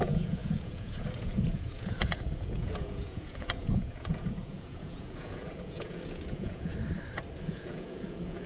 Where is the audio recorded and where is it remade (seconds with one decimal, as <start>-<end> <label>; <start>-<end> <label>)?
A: 0.0-6.7 remade; 6.7-7.4 recorded; 7.4-8.5 remade